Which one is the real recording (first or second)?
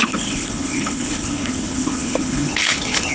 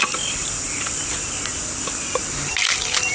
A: second